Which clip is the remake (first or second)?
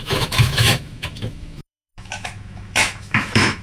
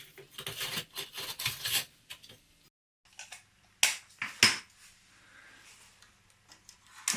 first